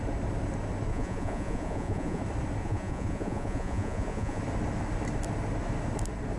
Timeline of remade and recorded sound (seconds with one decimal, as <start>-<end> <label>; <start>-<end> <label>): 0.0-0.9 recorded; 0.9-2.2 remade; 2.2-2.6 recorded; 2.6-4.4 remade; 4.4-6.4 recorded